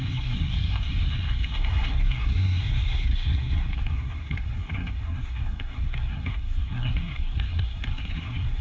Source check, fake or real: fake